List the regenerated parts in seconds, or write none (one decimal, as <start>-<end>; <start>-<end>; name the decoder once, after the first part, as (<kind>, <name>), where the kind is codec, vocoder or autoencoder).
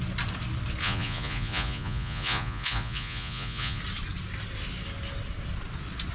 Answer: 0.8-3.8 (vocoder, Vocos)